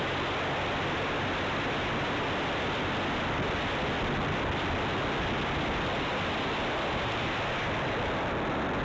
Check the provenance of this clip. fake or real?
real